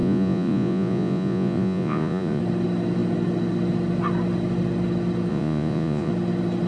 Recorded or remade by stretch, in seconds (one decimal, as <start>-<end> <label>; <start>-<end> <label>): 0.0-2.4 remade; 2.4-5.3 recorded; 5.3-6.1 remade; 6.1-6.7 recorded